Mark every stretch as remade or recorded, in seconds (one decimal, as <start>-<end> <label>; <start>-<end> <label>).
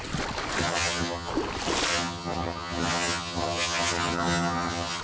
0.0-0.6 recorded; 0.6-1.3 remade; 1.3-1.9 recorded; 1.9-5.0 remade